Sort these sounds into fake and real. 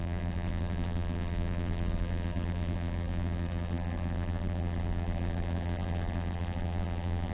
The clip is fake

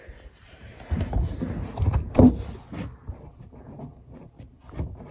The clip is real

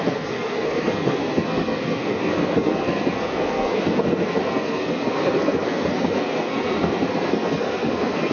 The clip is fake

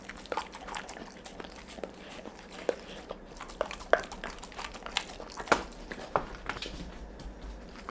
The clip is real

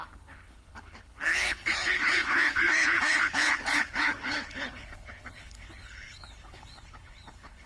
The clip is fake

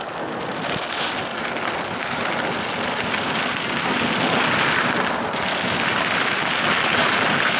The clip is real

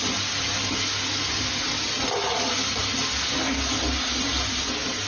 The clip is real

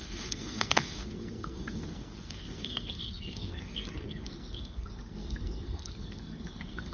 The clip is fake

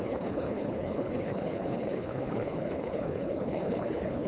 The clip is fake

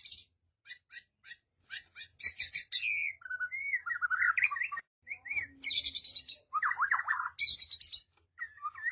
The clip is real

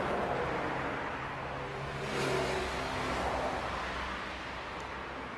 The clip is real